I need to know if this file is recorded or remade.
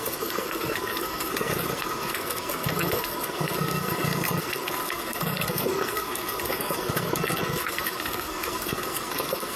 remade